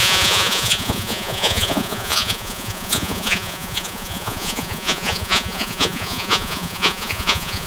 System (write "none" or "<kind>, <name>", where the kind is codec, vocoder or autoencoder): vocoder, Vocos